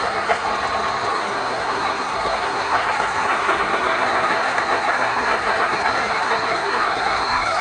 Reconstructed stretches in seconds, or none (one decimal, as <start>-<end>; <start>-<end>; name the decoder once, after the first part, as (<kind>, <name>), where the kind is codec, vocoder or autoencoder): 0.0-0.5 (codec, SNAC); 1.1-7.6

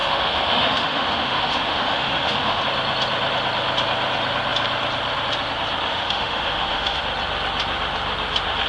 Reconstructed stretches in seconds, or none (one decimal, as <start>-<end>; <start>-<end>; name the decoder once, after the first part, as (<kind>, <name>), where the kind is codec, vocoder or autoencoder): 0.0-2.6 (autoencoder, DAC-VAE); 5.9-7.0

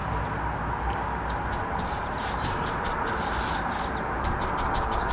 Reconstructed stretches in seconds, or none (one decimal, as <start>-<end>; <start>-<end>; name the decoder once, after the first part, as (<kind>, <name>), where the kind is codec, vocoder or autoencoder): 1.6-4.5 (vocoder, BigVGAN v2)

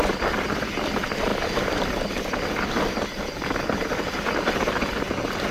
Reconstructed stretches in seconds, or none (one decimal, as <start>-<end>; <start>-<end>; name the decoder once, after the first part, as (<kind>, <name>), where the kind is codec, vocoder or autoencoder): none